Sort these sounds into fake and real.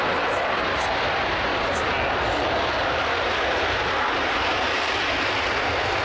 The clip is real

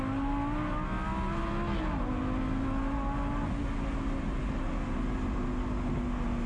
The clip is real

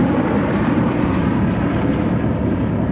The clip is fake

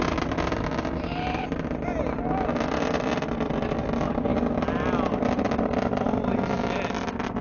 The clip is real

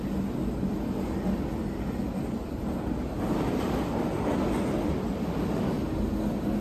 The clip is real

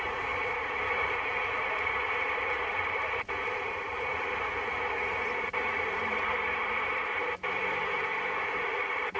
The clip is fake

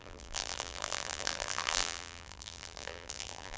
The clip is fake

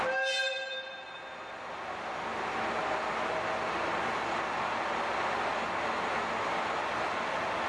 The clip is real